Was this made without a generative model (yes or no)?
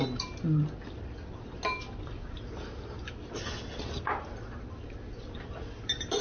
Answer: yes